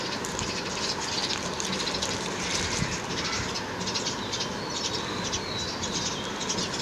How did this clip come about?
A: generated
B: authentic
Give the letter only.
B